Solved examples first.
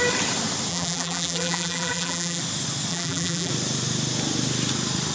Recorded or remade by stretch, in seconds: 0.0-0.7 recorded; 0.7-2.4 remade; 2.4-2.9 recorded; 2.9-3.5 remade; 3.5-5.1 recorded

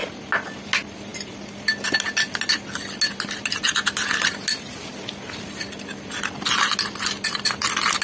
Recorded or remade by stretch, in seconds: 0.0-8.0 recorded

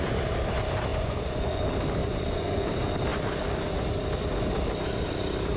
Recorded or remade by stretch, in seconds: 0.0-0.9 recorded; 0.9-1.6 remade; 1.6-2.0 recorded; 2.0-2.7 remade; 2.7-5.6 recorded

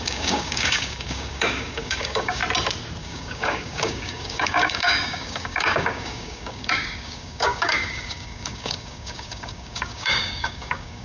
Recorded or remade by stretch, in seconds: 0.0-2.4 remade; 2.4-3.0 recorded; 3.0-11.0 remade

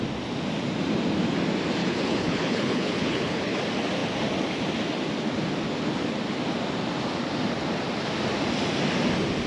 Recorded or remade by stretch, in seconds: 0.0-1.8 recorded; 1.8-3.6 remade; 3.6-9.5 recorded

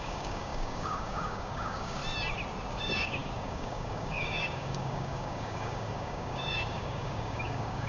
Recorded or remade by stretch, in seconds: 0.0-2.0 remade; 2.0-2.7 recorded; 2.7-7.9 remade

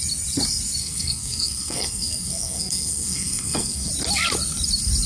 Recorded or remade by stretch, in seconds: 0.0-0.8 recorded; 0.8-3.9 remade; 3.9-5.1 recorded

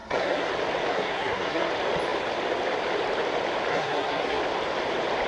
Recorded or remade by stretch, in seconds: 0.0-0.5 remade; 0.5-0.9 recorded; 0.9-1.7 remade; 1.7-3.7 recorded; 3.7-4.4 remade; 4.4-5.3 recorded